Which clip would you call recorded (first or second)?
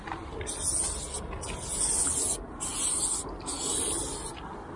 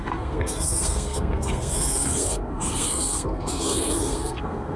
first